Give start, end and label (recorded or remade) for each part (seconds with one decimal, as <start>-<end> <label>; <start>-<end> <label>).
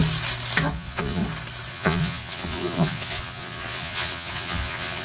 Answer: 0.0-0.7 recorded; 0.7-1.2 remade; 1.2-1.7 recorded; 1.7-5.0 remade